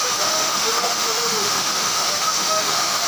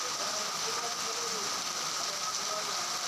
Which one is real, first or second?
second